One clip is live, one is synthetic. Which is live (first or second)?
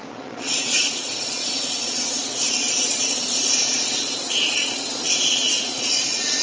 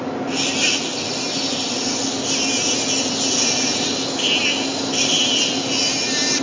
second